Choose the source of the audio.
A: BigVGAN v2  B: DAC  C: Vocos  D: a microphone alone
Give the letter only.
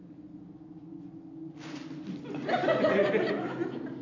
D